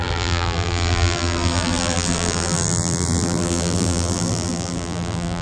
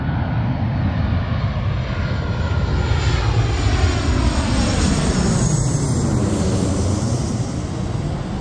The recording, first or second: second